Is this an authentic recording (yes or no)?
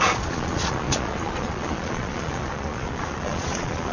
no